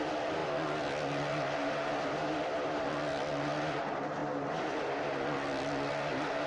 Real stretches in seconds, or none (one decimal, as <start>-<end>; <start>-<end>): 0.0-6.5